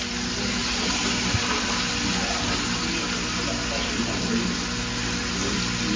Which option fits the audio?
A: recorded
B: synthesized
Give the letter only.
A